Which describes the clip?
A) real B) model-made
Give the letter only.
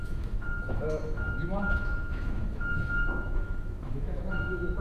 B